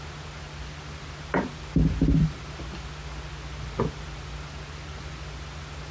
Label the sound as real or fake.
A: real